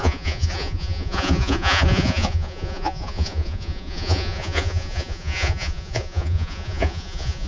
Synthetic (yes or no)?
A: yes